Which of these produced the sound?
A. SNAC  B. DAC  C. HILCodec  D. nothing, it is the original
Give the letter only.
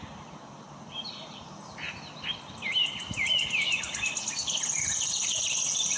D